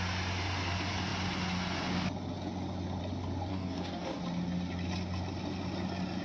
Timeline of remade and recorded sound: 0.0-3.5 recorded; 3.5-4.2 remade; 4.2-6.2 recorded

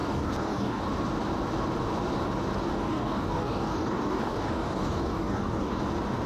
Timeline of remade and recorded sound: 0.0-0.8 remade; 0.8-2.7 recorded; 2.7-5.8 remade; 5.8-6.3 recorded

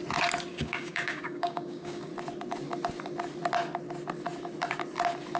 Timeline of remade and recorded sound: 0.0-0.5 recorded; 0.5-2.1 remade; 2.1-5.4 recorded

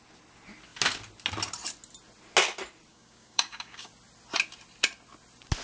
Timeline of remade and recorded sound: 0.0-2.9 recorded; 2.9-3.9 remade; 3.9-5.6 recorded

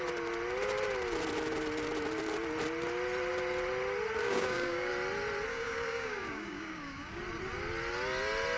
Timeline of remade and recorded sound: 0.0-4.2 recorded; 4.2-4.9 remade; 4.9-5.5 recorded; 5.5-7.2 remade; 7.2-8.6 recorded

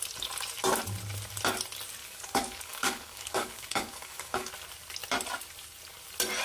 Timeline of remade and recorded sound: 0.0-2.0 recorded; 2.0-4.5 remade; 4.5-6.4 recorded

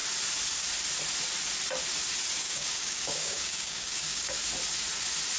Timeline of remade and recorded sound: 0.0-2.4 recorded; 2.4-4.4 remade; 4.4-5.4 recorded

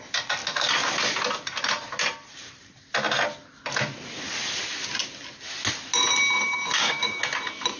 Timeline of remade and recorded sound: 0.0-6.7 recorded; 6.7-7.2 remade; 7.2-7.8 recorded